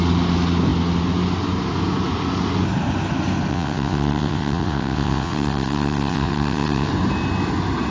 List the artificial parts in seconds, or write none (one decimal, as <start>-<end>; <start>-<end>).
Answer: 3.5-6.9